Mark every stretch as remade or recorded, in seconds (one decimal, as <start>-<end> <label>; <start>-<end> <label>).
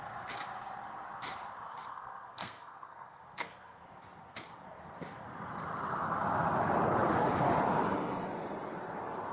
0.0-1.9 recorded; 1.9-3.8 remade; 3.8-9.3 recorded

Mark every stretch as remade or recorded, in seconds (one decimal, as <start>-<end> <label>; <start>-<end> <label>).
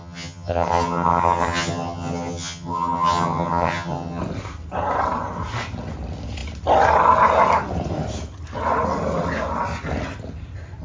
0.0-4.2 remade; 4.2-10.8 recorded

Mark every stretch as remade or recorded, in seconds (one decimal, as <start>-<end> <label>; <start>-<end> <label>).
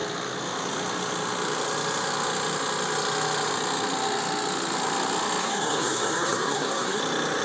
0.0-5.4 recorded; 5.4-7.0 remade; 7.0-7.4 recorded